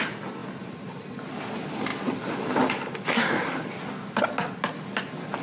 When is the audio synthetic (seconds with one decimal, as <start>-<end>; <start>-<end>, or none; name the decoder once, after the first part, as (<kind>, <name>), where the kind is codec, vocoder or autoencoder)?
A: none